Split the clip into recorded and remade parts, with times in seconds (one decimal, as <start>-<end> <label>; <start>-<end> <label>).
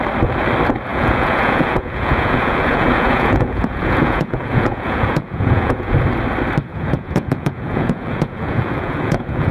0.0-0.9 recorded; 0.9-5.9 remade; 5.9-6.7 recorded; 6.7-9.5 remade